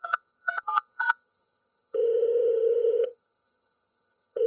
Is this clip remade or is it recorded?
remade